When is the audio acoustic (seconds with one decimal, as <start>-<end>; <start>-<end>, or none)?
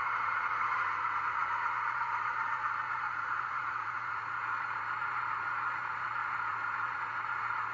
none